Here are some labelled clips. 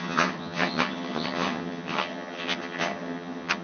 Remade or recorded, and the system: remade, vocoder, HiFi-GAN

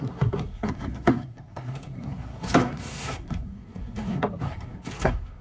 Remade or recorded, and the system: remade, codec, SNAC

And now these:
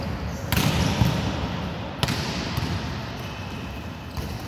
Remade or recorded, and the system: recorded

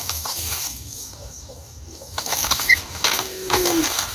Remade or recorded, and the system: remade, codec, DAC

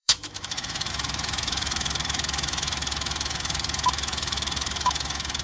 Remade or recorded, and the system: remade, autoencoder, DAC-VAE